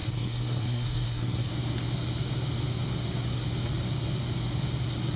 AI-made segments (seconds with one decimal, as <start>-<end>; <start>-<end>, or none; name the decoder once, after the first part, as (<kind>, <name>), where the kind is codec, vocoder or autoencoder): 0.0-1.5 (codec, SNAC)

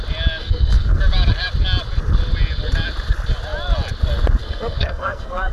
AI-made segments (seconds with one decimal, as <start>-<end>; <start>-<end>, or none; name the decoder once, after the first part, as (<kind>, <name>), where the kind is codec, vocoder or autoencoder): 0.4-1.0 (codec, SNAC); 4.4-5.5

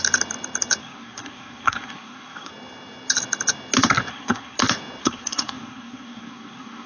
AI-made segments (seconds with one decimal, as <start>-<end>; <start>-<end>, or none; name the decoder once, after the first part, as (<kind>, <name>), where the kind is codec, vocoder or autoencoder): 0.8-2.5 (codec, SNAC); 4.1-4.6; 5.0-6.9

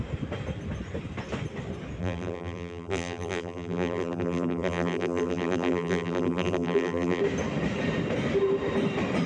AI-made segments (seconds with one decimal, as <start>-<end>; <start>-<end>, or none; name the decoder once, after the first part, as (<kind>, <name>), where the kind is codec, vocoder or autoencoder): 2.0-7.2 (vocoder, BigVGAN v2)